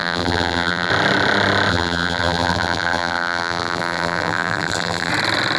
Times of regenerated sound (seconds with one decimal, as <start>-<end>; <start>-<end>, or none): 0.0-0.9; 1.7-5.1